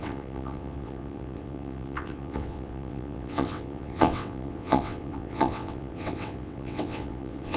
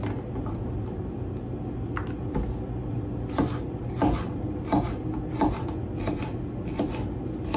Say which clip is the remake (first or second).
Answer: first